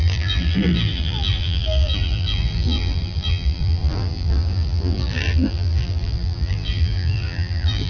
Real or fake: fake